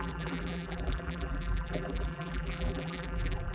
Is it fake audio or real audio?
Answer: fake